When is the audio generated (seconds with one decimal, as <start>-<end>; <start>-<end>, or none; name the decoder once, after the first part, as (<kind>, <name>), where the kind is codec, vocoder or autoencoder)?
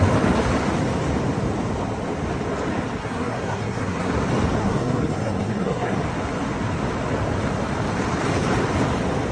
3.0-4.1 (codec, SNAC); 4.6-6.0